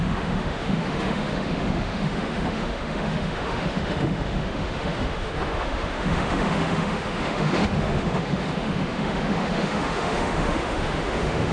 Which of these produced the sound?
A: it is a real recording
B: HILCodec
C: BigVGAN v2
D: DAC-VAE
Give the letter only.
D